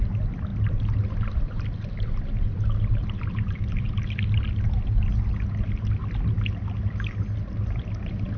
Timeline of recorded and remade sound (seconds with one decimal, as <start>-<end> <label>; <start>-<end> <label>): 0.0-8.4 recorded